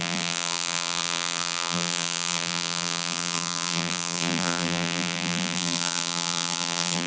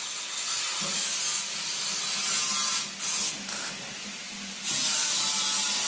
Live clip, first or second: second